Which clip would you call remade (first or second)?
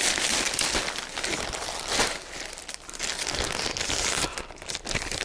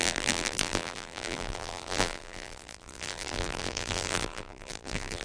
second